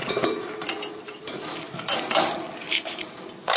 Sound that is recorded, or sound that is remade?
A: remade